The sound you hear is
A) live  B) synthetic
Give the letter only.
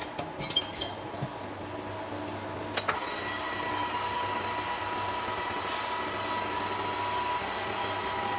A